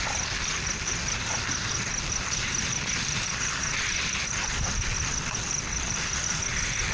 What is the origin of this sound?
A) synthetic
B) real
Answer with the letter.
A